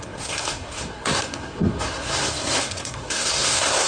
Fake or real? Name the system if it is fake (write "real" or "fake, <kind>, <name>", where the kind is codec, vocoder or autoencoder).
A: fake, codec, SNAC